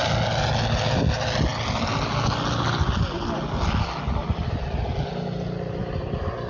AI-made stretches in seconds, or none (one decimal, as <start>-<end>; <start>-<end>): none